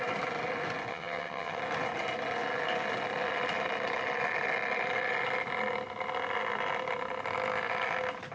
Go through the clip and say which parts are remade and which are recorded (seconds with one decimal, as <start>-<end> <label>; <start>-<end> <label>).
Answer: 0.0-0.9 recorded; 0.9-1.6 remade; 1.6-8.3 recorded